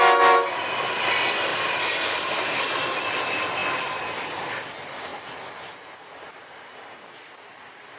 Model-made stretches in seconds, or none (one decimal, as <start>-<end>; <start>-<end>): none